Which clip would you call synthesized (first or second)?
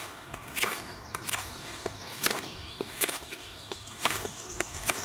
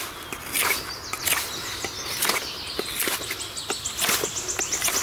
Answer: first